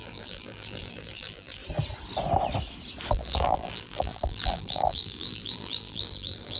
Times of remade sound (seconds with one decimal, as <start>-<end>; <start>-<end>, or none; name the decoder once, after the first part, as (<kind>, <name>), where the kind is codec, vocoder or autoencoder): 0.0-1.6 (vocoder, BigVGAN v2); 3.1-6.6